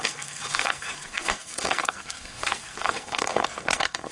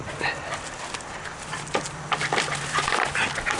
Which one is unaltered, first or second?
second